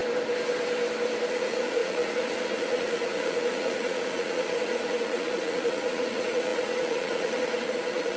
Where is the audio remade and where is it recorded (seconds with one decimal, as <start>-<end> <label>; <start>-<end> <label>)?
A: 0.0-1.3 recorded; 1.3-8.2 remade